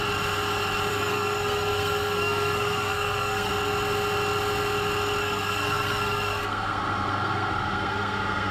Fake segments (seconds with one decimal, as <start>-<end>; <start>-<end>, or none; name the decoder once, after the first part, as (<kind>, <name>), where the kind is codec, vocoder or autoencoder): 0.9-3.5 (codec, SNAC); 5.2-8.5

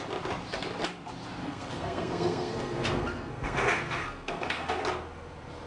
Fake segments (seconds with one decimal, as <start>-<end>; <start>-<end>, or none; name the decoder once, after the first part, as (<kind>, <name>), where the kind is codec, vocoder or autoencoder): 1.4-4.8 (codec, SNAC)

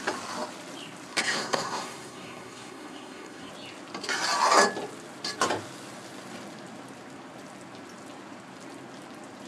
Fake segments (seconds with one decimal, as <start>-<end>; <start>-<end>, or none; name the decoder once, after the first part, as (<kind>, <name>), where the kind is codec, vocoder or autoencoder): 1.1-3.5 (codec, SNAC)

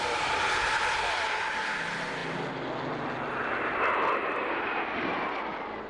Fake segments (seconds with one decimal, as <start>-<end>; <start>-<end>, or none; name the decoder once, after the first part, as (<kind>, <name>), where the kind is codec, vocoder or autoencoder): none

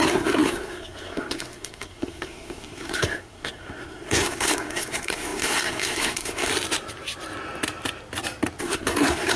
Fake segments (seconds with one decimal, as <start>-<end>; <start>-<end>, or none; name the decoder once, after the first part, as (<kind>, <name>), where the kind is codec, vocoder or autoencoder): 0.0-6.5 (codec, SNAC); 8.6-9.4

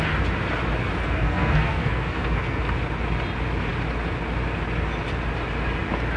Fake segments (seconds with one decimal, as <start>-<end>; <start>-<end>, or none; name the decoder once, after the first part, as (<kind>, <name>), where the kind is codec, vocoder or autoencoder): 1.0-2.6 (codec, SNAC)

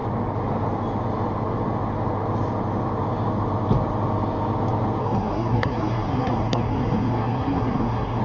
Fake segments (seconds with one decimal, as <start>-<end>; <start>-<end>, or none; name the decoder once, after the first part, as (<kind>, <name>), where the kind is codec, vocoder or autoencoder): 5.0-8.2 (codec, SNAC)

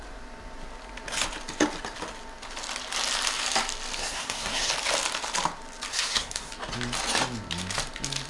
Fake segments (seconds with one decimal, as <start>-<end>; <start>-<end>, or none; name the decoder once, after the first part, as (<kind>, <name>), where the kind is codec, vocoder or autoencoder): 4.0-4.7 (codec, SNAC); 5.9-6.5